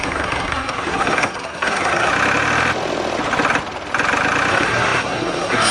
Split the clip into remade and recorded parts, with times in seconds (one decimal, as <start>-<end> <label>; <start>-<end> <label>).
0.0-2.1 remade; 2.1-4.5 recorded; 4.5-5.7 remade

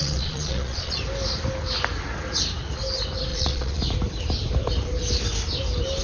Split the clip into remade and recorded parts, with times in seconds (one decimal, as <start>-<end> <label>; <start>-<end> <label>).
0.0-1.0 remade; 1.0-3.3 recorded; 3.3-3.8 remade; 3.8-6.0 recorded

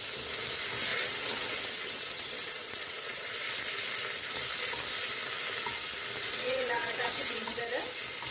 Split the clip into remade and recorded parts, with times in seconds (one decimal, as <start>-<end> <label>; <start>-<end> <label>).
0.0-0.9 recorded; 0.9-3.3 remade; 3.3-6.3 recorded; 6.3-7.6 remade; 7.6-8.3 recorded

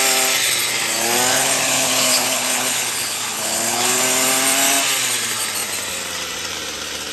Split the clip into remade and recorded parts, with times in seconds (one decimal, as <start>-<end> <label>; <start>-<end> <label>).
0.0-1.3 recorded; 1.3-4.0 remade; 4.0-7.1 recorded